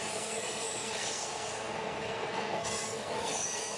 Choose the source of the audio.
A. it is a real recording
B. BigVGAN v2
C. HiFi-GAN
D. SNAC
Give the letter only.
D